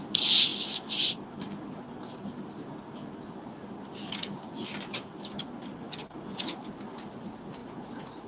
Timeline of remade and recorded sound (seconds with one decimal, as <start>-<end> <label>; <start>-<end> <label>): 0.0-6.0 recorded; 6.0-6.6 remade; 6.6-7.6 recorded; 7.6-8.3 remade